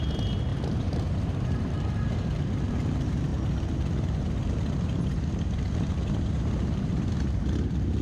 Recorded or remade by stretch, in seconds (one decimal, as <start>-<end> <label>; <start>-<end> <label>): 0.0-3.3 remade; 3.3-6.3 recorded; 6.3-8.0 remade